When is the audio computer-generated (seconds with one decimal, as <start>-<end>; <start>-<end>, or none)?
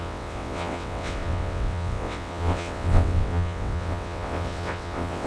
0.0-5.3